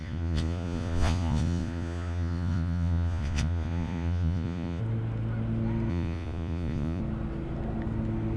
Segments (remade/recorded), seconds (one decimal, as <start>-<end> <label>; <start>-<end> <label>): 0.0-4.8 remade; 4.8-5.9 recorded; 5.9-7.0 remade; 7.0-8.4 recorded